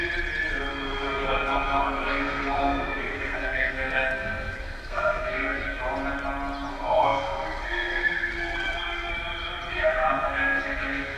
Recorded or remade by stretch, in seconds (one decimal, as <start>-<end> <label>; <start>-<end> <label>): 0.0-0.7 recorded; 0.7-5.8 remade; 5.8-6.7 recorded; 6.7-9.1 remade; 9.1-9.7 recorded; 9.7-11.2 remade